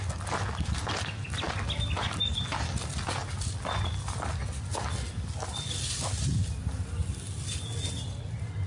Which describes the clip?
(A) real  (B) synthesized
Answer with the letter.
A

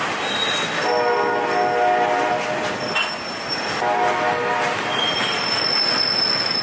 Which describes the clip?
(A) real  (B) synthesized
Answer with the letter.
A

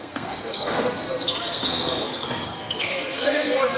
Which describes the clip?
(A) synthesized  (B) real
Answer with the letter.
A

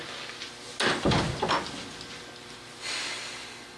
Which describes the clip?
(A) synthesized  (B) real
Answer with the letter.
B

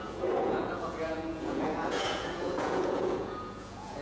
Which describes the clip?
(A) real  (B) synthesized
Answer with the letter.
B